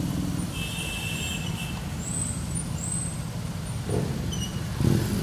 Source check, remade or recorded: recorded